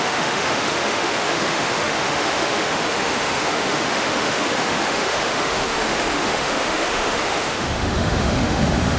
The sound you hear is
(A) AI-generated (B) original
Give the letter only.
A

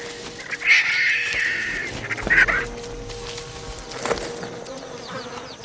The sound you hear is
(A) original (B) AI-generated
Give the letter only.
A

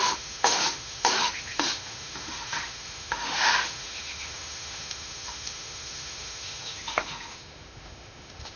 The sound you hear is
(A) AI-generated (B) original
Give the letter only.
A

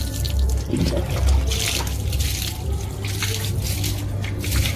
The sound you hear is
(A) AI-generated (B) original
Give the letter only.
B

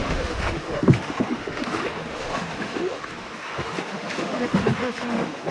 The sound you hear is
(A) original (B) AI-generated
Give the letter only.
B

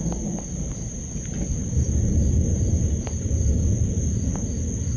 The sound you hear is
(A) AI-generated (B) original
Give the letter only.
B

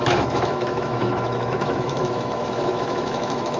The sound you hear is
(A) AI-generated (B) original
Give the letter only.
A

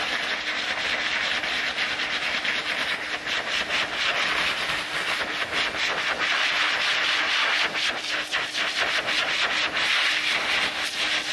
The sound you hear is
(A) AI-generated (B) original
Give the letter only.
B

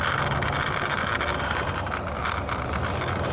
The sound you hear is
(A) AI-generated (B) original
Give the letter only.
B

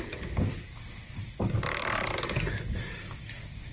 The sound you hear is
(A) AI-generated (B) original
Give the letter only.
B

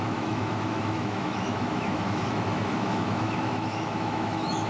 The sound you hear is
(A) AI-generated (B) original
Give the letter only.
A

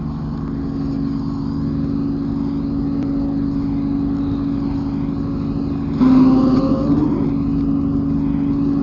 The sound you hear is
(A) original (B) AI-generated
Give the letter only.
A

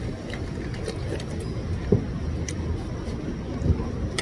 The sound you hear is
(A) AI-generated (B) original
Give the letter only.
B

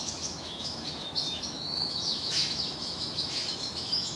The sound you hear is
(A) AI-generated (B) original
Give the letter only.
A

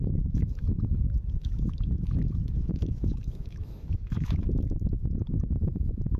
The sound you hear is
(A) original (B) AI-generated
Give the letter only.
B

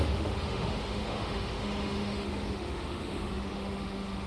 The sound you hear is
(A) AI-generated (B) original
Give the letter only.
A